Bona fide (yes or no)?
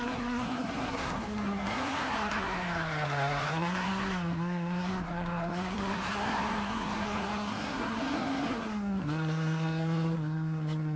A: no